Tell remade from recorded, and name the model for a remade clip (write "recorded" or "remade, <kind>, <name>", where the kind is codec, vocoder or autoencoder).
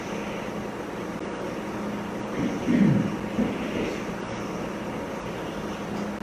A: recorded